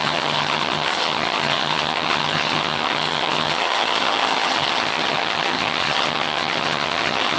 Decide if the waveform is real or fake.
fake